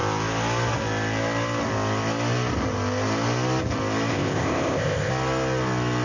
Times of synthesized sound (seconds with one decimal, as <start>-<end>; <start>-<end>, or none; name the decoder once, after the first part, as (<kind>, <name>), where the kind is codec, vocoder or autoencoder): 4.1-5.1 (codec, ZipCodec)